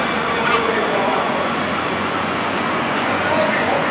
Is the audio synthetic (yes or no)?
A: yes